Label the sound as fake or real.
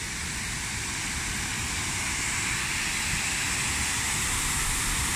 real